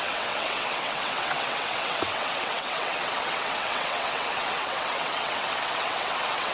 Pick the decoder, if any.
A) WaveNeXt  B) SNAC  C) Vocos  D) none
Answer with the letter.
A